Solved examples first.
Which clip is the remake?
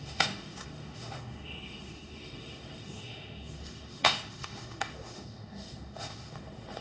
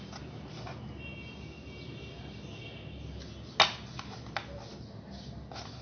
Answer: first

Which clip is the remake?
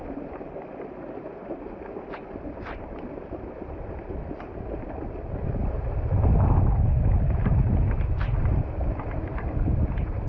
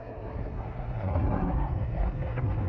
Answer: second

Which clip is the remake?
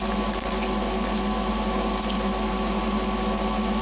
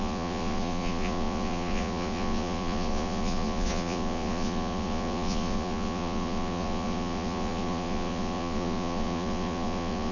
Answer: second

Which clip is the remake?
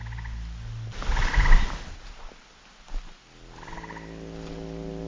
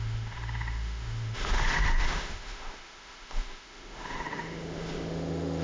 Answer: second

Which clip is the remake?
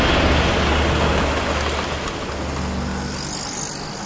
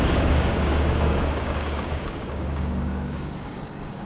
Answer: second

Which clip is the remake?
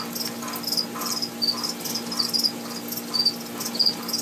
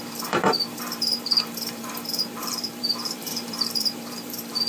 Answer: second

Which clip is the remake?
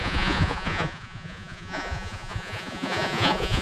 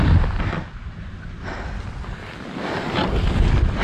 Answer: first